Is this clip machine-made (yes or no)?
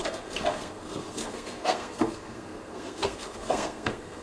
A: yes